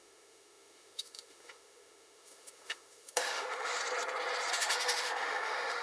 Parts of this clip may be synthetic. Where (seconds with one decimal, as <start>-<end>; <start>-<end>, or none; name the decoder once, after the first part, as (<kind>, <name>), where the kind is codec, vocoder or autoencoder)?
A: 0.0-3.8 (autoencoder, DAC-VAE); 4.5-5.8